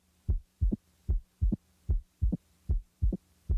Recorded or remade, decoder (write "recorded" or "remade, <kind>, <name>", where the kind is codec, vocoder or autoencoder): remade, vocoder, BigVGAN v2